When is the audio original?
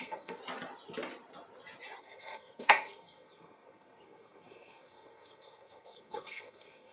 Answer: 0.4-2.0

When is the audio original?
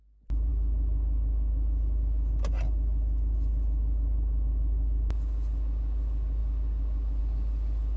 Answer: 0.0-8.0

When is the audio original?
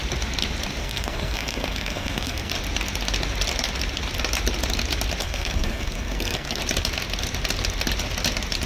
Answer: 0.0-0.8; 2.5-5.2; 6.6-8.7